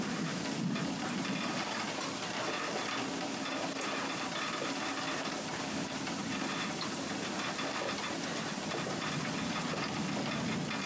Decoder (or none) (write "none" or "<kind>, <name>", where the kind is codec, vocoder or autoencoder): vocoder, BigVGAN v2